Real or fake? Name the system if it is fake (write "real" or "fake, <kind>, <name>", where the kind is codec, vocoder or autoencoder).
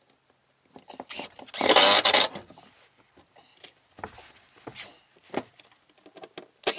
real